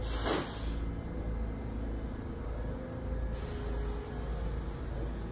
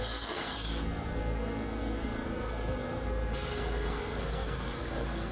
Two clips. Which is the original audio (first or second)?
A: first